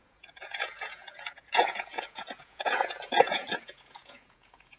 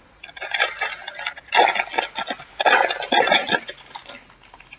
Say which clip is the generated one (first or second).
first